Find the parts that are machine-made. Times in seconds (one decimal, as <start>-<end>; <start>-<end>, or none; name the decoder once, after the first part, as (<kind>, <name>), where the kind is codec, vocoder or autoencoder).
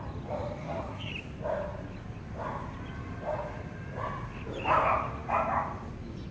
0.6-1.1 (codec, SNAC)